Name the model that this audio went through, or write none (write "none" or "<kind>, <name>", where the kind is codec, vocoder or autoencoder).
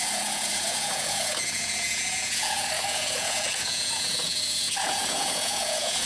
vocoder, Vocos